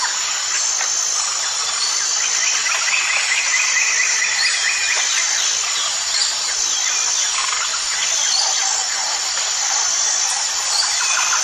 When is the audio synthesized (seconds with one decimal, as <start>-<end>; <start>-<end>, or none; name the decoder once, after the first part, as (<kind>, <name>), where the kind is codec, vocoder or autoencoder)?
none